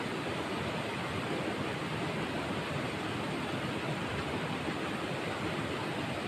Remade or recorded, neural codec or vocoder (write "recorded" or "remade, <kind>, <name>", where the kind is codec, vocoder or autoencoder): remade, vocoder, BigVGAN v2